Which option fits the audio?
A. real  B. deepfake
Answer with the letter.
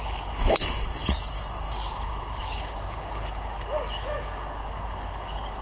B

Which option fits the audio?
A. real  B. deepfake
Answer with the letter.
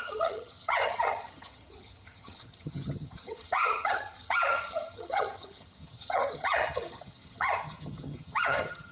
B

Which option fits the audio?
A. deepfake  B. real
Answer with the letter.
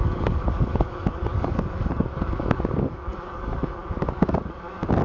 A